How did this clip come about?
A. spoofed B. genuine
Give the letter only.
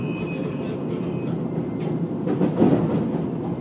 B